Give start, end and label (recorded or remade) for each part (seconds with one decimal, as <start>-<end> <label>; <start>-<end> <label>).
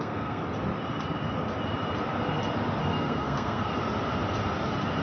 0.0-0.4 remade; 0.4-3.0 recorded; 3.0-3.7 remade; 3.7-5.0 recorded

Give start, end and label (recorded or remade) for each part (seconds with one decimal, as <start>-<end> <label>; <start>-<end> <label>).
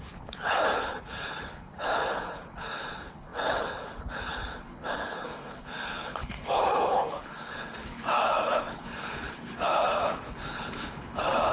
0.0-11.5 remade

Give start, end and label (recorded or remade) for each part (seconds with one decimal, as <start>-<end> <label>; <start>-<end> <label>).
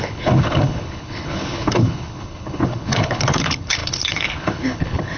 0.0-5.2 remade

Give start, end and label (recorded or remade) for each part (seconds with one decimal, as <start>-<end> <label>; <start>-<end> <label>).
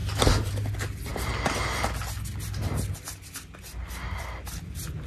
0.0-5.1 recorded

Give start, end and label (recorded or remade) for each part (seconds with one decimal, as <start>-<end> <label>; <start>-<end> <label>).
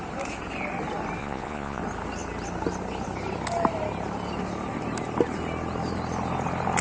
0.0-1.2 recorded; 1.2-1.8 remade; 1.8-6.8 recorded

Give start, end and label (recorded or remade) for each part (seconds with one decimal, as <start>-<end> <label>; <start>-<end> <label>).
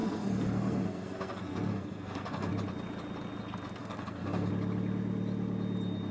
0.0-2.5 remade; 2.5-3.8 recorded; 3.8-4.5 remade; 4.5-6.1 recorded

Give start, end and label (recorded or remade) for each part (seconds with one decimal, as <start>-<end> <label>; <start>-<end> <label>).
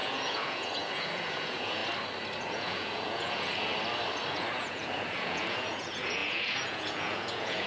0.0-1.8 remade; 1.8-2.4 recorded; 2.4-3.7 remade; 3.7-4.3 recorded; 4.3-7.7 remade